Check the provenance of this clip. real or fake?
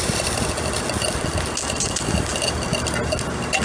real